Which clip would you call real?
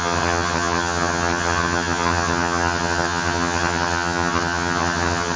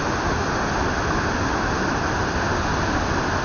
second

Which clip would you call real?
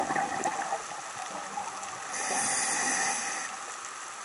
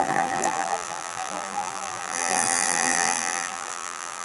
first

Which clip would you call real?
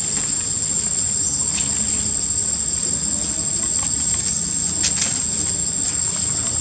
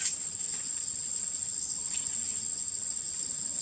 first